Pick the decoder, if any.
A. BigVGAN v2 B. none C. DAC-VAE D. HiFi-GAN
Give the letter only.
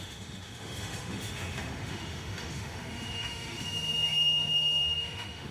C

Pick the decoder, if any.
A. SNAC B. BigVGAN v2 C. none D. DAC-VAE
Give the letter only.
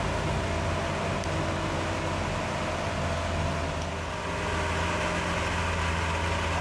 C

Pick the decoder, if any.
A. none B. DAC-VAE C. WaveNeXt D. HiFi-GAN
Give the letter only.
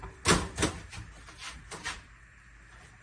A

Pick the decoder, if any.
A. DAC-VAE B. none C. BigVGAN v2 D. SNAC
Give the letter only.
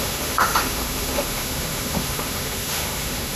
A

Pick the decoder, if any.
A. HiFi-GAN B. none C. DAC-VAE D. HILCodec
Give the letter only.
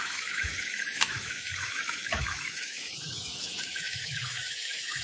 C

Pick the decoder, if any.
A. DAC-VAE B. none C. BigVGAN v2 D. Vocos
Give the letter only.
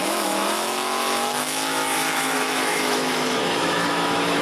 A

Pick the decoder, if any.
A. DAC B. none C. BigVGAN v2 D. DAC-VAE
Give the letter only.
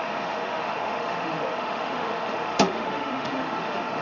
D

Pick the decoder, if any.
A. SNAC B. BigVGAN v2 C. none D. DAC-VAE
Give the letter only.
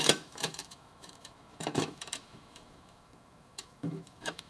D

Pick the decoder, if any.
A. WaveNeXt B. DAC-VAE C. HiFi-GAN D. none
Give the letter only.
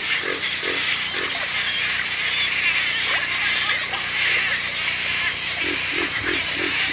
D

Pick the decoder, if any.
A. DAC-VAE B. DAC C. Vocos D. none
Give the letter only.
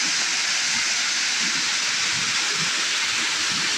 D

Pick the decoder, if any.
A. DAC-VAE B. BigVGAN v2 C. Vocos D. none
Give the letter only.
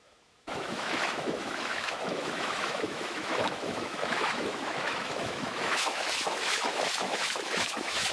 A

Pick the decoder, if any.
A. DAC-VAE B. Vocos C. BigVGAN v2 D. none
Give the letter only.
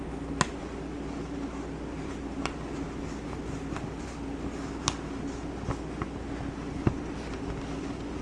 D